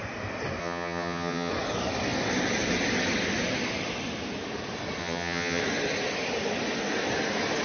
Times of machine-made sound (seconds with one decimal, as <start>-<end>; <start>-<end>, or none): 0.6-1.5; 5.0-5.6